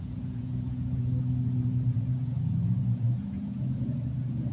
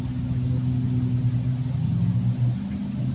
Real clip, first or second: second